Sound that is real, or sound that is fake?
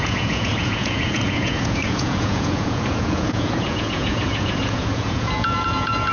fake